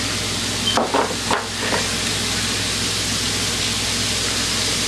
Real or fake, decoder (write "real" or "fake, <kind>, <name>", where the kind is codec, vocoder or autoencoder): real